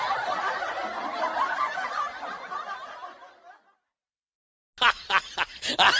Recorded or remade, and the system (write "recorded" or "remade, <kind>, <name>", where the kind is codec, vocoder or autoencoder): recorded